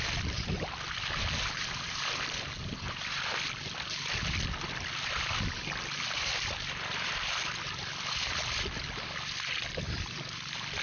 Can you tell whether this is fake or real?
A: real